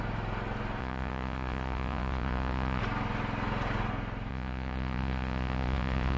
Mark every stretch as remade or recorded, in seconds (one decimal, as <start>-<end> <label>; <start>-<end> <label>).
0.0-0.8 recorded; 0.8-2.8 remade; 2.8-4.3 recorded; 4.3-6.2 remade